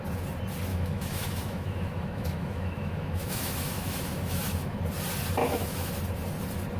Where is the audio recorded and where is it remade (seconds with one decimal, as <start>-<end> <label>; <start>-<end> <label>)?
0.0-0.7 recorded; 0.7-4.8 remade; 4.8-5.4 recorded; 5.4-5.9 remade; 5.9-6.8 recorded